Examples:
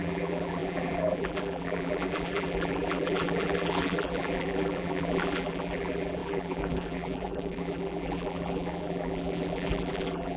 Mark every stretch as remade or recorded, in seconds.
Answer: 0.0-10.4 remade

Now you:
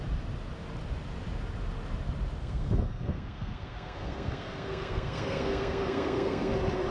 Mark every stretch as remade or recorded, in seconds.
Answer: 0.0-2.4 recorded; 2.4-6.5 remade; 6.5-6.9 recorded

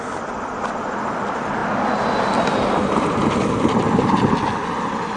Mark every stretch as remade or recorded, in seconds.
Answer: 0.0-5.2 recorded

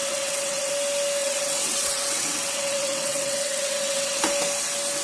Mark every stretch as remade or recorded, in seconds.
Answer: 0.0-0.7 remade; 0.7-1.2 recorded; 1.2-4.2 remade; 4.2-5.0 recorded

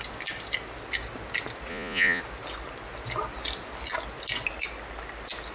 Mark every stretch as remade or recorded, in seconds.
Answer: 0.0-1.7 recorded; 1.7-2.2 remade; 2.2-5.5 recorded

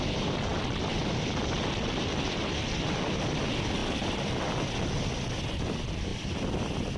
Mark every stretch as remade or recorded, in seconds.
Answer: 0.0-7.0 recorded

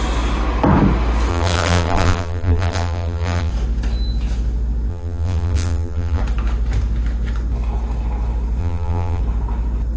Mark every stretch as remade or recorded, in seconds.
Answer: 0.0-1.3 recorded; 1.3-3.5 remade; 3.5-4.9 recorded; 4.9-6.2 remade; 6.2-8.6 recorded; 8.6-9.2 remade; 9.2-10.0 recorded